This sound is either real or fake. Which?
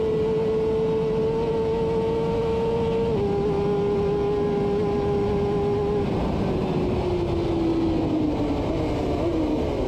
real